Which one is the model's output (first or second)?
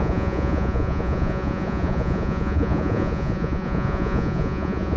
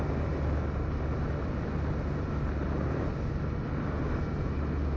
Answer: first